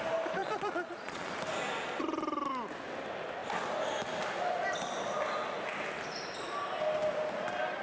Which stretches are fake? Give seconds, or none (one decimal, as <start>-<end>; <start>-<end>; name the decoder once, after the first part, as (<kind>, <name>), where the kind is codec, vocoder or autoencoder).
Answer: 0.4-1.3 (vocoder, Vocos)